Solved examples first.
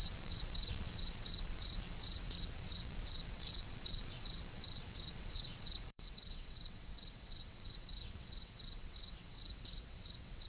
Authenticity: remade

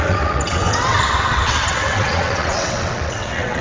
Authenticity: remade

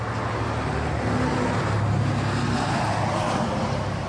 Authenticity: recorded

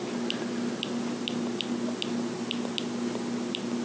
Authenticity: recorded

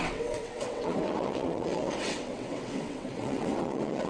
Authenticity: remade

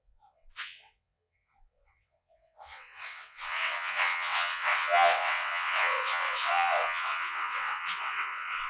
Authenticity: remade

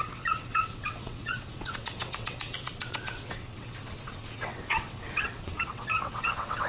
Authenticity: remade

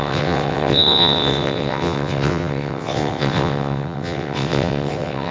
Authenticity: remade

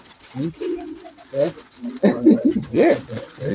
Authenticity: remade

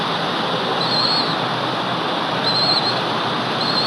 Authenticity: recorded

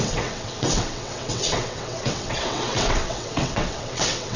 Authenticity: remade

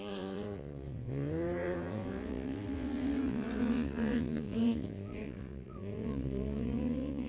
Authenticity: remade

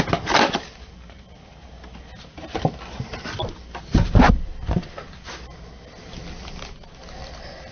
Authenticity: recorded